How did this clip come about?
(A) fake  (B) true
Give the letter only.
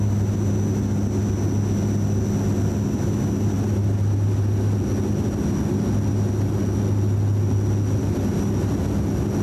B